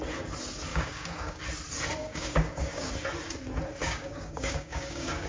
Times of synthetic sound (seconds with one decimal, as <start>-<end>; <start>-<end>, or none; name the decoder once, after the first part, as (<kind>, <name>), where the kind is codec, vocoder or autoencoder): 0.7-1.4 (codec, DAC); 2.0-2.9; 3.8-5.3